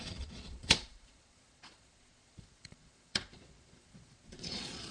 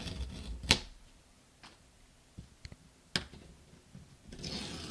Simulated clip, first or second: first